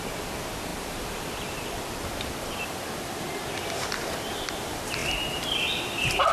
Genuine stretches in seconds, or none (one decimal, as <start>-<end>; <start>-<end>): 0.0-6.3